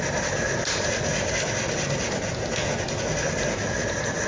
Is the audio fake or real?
real